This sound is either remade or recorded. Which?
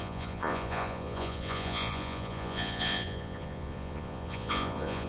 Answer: remade